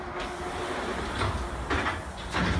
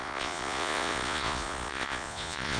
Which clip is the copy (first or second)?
second